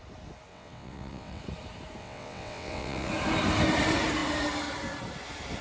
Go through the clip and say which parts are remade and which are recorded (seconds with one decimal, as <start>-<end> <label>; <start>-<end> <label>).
0.0-0.5 recorded; 0.5-1.4 remade; 1.4-2.0 recorded; 2.0-3.1 remade; 3.1-5.6 recorded